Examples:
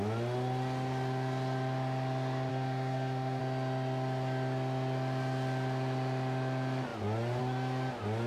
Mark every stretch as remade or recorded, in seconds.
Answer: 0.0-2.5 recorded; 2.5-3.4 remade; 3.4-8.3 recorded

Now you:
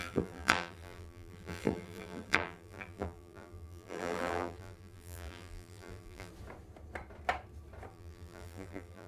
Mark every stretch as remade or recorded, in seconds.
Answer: 0.0-6.3 remade; 6.3-7.9 recorded; 7.9-9.1 remade

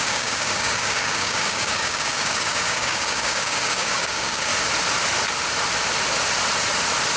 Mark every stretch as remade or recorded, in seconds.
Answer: 0.0-4.5 remade; 4.5-7.2 recorded

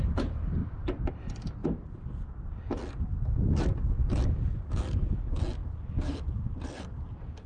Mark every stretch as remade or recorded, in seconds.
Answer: 0.0-0.6 recorded; 0.6-1.1 remade; 1.1-1.6 recorded; 1.6-2.1 remade; 2.1-5.6 recorded; 5.6-7.5 remade

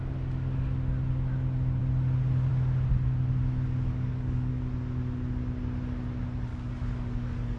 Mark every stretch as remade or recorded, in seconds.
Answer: 0.0-3.9 recorded; 3.9-4.5 remade; 4.5-6.5 recorded; 6.5-7.6 remade

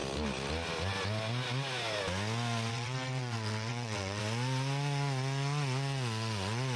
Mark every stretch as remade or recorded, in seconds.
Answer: 0.0-2.7 recorded; 2.7-4.2 remade; 4.2-6.8 recorded